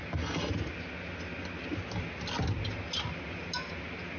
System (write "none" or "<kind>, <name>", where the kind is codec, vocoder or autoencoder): none